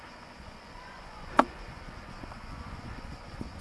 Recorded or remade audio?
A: remade